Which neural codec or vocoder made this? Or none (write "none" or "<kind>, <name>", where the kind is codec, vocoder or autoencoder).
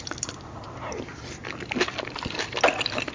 none